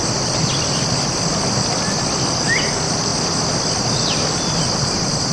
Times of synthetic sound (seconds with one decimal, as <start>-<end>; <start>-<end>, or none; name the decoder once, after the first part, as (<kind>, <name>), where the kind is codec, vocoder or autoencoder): none

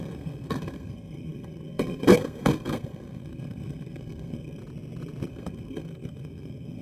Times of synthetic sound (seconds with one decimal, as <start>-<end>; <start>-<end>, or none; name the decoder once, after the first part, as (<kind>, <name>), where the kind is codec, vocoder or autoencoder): 0.0-4.6 (codec, SNAC); 5.3-6.8